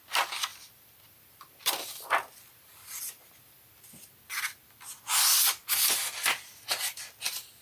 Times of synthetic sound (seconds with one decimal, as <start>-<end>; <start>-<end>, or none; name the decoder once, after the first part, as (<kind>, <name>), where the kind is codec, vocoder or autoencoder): 0.5-3.7 (vocoder, BigVGAN v2)